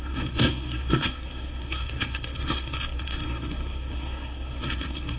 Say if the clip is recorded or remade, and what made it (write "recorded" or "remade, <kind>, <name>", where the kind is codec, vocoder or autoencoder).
remade, codec, SNAC